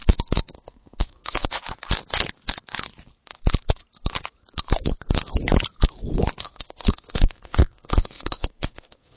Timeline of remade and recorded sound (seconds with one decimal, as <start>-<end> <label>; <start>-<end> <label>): 0.0-0.5 recorded; 0.5-1.6 remade; 1.6-6.4 recorded; 6.4-9.2 remade